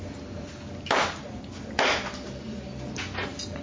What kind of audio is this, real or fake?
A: real